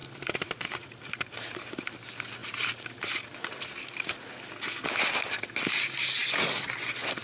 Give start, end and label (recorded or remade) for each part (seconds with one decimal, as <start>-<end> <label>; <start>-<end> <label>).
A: 0.0-1.8 remade; 1.8-2.4 recorded; 2.4-4.1 remade; 4.1-7.2 recorded